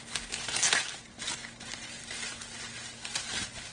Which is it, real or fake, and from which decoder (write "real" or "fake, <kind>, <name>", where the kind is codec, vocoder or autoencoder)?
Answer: real